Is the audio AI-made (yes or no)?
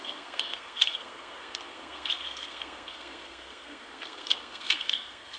yes